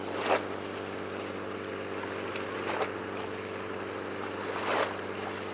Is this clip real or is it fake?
real